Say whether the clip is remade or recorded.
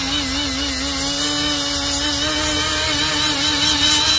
recorded